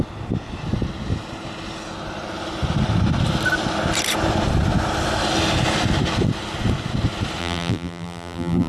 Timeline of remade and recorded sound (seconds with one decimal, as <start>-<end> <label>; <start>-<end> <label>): 0.0-7.4 recorded; 7.4-8.7 remade